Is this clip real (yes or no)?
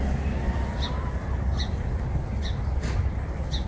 yes